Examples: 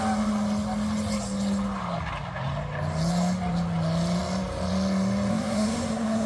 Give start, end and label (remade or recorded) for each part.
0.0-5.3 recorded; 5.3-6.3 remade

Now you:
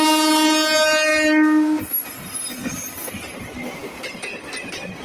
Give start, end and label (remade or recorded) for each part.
0.0-5.0 recorded

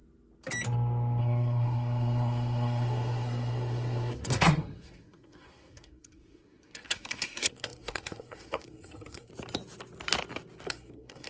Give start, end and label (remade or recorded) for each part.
0.0-1.2 recorded; 1.2-9.3 remade; 9.3-10.7 recorded; 10.7-11.3 remade

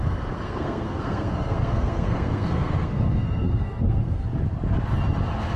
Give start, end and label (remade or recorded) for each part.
0.0-4.2 remade; 4.2-5.6 recorded

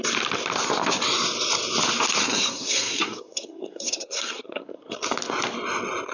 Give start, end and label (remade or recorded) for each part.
0.0-2.2 recorded; 2.2-4.9 remade; 4.9-6.1 recorded

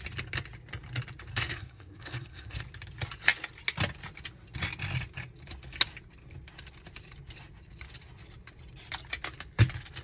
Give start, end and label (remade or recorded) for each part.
0.0-1.3 recorded; 1.3-2.6 remade; 2.6-10.0 recorded

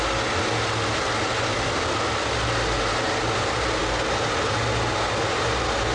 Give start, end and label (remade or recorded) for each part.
0.0-5.9 recorded